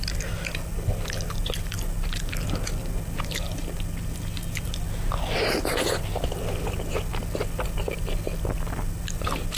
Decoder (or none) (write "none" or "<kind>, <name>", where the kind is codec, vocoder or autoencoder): none